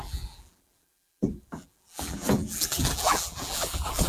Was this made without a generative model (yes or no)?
no